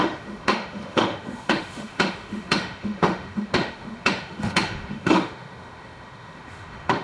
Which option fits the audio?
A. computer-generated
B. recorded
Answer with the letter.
A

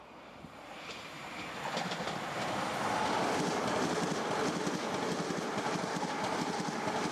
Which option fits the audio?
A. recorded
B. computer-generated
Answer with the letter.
A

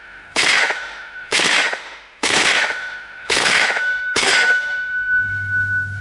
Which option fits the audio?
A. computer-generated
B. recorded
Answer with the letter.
A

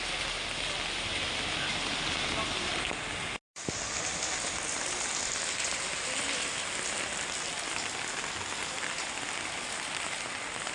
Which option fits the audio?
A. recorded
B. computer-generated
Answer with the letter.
A